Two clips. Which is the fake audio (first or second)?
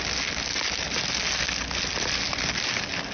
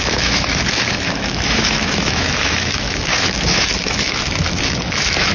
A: second